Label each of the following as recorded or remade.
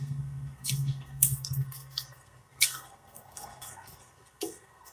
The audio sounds remade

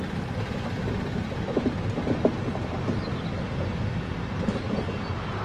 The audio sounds recorded